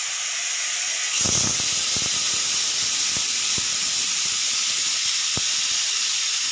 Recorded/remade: recorded